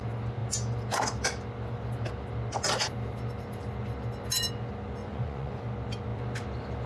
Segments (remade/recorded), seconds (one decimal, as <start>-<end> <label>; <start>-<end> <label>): 0.0-5.0 recorded; 5.0-5.6 remade; 5.6-6.9 recorded